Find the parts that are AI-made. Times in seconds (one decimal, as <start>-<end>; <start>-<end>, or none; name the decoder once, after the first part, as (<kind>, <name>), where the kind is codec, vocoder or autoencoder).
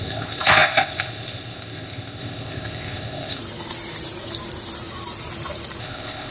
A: 0.0-3.4 (codec, ZipCodec); 5.8-6.3